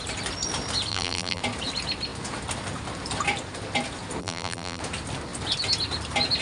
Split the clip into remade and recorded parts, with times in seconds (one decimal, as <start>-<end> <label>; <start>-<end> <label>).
0.0-0.9 recorded; 0.9-1.4 remade; 1.4-4.2 recorded; 4.2-4.8 remade; 4.8-6.4 recorded